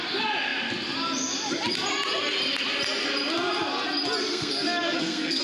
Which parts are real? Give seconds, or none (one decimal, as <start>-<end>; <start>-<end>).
0.0-4.3